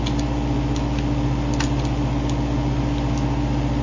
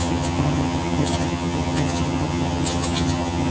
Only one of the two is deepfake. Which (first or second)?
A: second